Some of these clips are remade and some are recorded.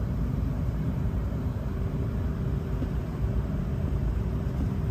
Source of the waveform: remade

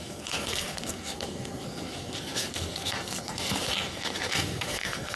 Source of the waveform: remade